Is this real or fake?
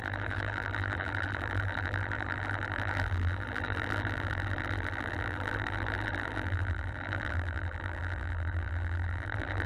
fake